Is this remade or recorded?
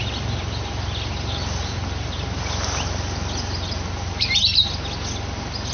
recorded